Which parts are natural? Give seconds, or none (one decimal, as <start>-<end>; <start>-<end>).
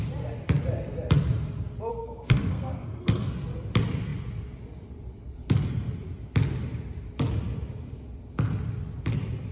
0.0-1.9; 3.3-9.5